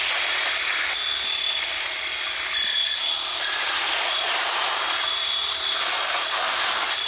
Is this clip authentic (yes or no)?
yes